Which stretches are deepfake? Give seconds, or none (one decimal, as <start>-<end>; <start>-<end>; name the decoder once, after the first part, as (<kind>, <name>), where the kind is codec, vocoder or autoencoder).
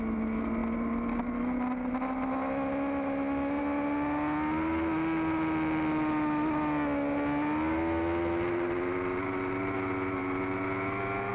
none